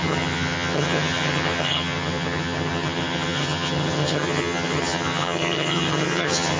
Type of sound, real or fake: fake